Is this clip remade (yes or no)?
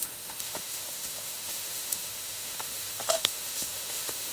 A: yes